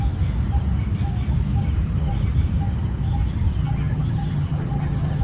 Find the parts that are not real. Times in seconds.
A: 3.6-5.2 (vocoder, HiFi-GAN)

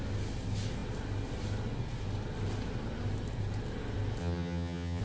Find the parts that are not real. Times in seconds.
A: 4.2-5.0 (vocoder, HiFi-GAN)

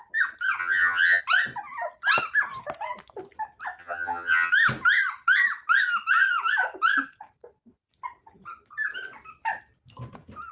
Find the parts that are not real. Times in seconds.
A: 0.6-1.2 (vocoder, HiFi-GAN); 3.8-4.5

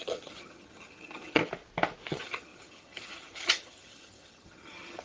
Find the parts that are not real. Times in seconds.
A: 0.0-1.4 (vocoder, HiFi-GAN); 2.1-5.0

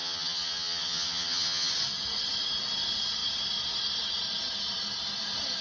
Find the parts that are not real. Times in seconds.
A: 0.0-1.7 (vocoder, HiFi-GAN)